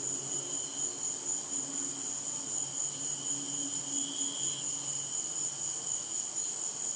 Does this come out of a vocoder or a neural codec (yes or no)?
no